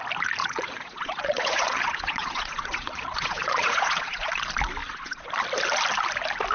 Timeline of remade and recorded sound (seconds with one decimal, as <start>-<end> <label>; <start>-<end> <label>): 0.0-0.4 recorded; 0.4-4.3 remade; 4.3-4.8 recorded; 4.8-5.3 remade; 5.3-6.5 recorded